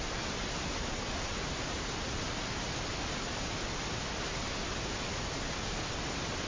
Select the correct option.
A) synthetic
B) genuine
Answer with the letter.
B